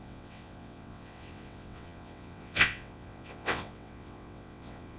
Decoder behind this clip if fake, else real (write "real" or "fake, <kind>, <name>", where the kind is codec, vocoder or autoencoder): fake, vocoder, WaveNeXt